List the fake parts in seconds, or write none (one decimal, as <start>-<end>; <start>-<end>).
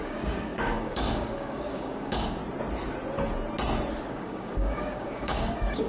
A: 0.0-2.4; 4.0-5.9